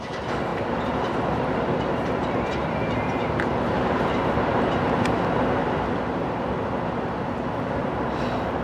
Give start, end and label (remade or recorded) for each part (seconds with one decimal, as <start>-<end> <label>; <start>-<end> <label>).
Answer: 0.0-0.5 recorded; 0.5-5.2 remade; 5.2-7.8 recorded; 7.8-8.6 remade